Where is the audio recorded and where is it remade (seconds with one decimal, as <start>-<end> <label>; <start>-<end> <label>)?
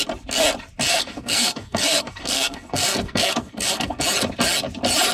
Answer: 0.0-0.9 recorded; 0.9-4.0 remade; 4.0-5.1 recorded